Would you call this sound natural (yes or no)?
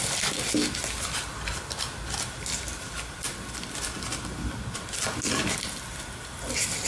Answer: yes